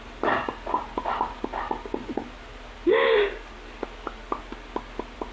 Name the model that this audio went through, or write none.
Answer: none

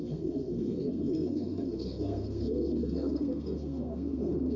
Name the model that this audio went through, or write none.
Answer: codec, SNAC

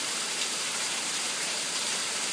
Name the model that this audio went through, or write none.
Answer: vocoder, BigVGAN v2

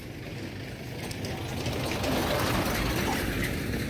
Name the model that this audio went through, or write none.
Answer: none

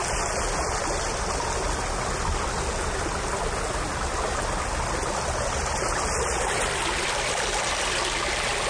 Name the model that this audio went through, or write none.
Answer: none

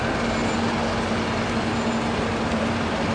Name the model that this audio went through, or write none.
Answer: none